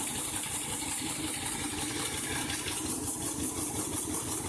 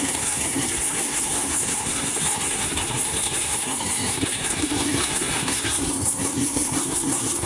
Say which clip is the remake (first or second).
second